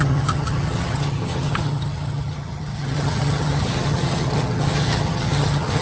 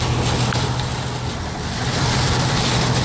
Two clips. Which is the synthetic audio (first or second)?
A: first